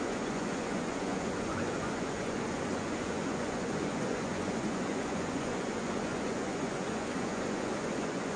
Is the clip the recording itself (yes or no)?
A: no